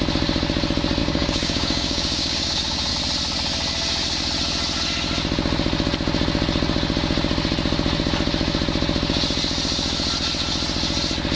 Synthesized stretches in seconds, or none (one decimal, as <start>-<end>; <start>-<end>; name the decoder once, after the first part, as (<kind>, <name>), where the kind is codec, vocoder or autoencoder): 1.0-2.9 (codec, DAC)